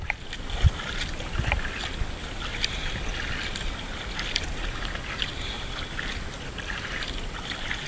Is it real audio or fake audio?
real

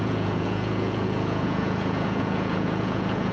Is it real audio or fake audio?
fake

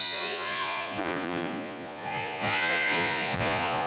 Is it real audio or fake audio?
fake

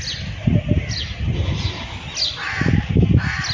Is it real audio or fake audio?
real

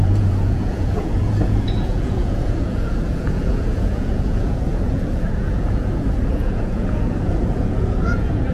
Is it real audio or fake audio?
fake